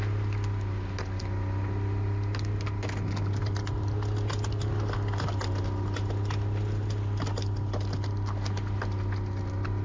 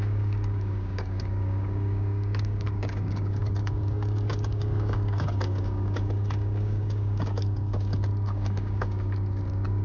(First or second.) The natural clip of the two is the first